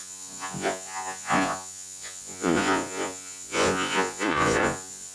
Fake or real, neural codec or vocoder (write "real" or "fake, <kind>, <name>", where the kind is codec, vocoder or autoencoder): fake, vocoder, Vocos